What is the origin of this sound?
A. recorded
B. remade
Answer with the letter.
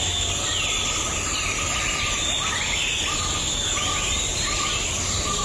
A